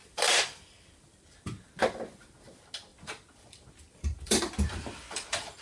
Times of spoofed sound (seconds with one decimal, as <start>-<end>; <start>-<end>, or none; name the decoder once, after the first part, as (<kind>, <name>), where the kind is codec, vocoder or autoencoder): 0.0-1.7 (vocoder, BigVGAN v2); 2.9-5.6